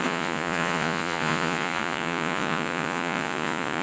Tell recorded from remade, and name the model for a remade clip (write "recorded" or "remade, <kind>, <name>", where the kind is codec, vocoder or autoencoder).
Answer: remade, vocoder, Vocos